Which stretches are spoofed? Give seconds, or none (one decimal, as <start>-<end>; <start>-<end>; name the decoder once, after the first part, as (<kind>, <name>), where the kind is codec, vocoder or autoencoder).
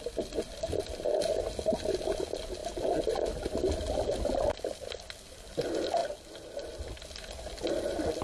none